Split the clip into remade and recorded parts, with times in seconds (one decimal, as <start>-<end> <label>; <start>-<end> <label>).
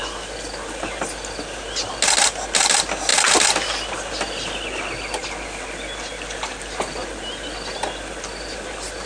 0.0-9.1 recorded